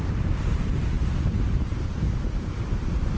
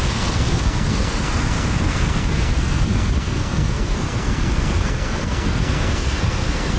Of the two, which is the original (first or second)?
first